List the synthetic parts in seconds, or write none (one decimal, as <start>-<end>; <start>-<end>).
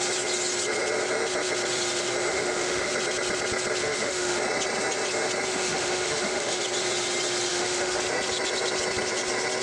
2.3-2.9; 3.8-4.4; 5.5-6.6; 7.5-8.0